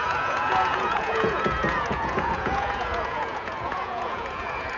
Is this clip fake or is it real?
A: fake